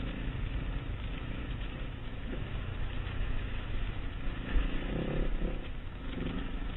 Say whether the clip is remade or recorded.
remade